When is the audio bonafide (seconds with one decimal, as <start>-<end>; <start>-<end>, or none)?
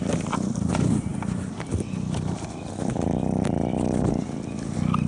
0.0-5.1